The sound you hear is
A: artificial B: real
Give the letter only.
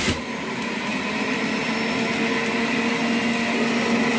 B